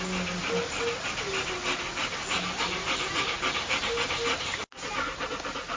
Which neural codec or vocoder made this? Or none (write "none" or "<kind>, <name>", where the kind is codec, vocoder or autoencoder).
none